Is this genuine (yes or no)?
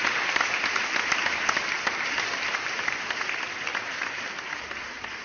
yes